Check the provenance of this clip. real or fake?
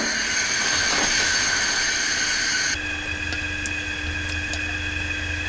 real